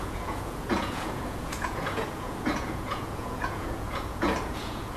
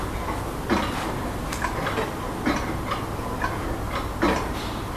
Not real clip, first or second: first